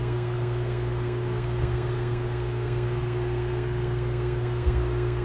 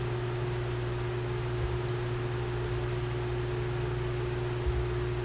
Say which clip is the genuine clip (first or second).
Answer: second